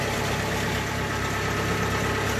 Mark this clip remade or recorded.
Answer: recorded